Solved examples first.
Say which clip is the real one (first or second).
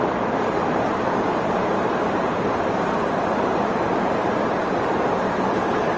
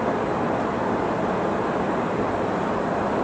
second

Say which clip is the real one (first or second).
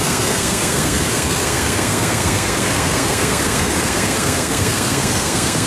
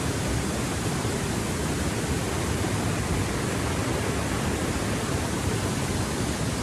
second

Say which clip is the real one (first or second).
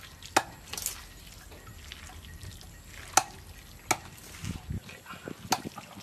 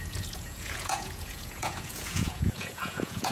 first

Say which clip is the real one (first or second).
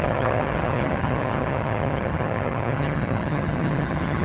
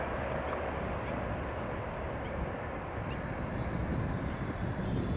second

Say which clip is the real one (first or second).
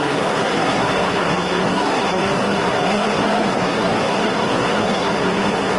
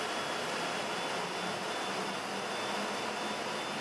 second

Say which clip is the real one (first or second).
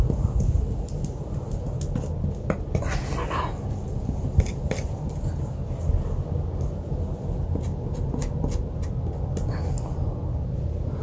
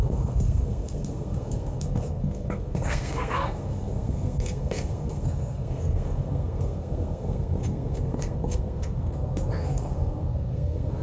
first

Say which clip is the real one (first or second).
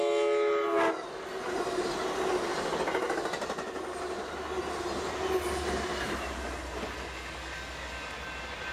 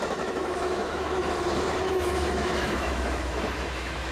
first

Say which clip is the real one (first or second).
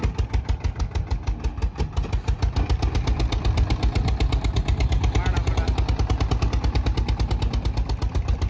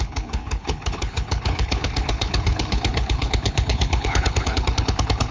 first